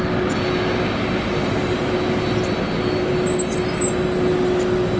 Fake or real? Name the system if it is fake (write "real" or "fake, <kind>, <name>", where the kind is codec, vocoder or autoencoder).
real